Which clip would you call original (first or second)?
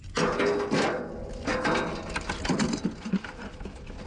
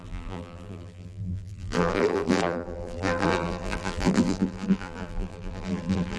first